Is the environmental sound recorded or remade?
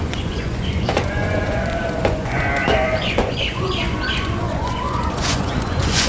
remade